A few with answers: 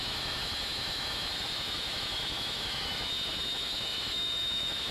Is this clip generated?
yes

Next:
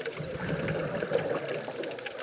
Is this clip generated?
no